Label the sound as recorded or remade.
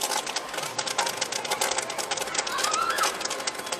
recorded